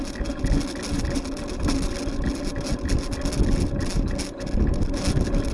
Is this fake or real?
real